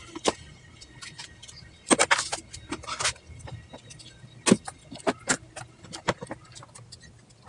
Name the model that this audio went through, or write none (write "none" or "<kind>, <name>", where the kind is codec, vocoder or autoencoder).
none